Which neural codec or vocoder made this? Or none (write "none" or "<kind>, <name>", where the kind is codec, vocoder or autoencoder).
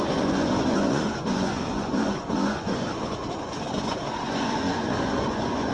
vocoder, Vocos